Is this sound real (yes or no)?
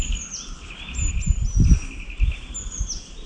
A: yes